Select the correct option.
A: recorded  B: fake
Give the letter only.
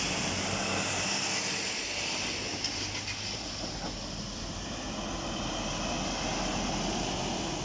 A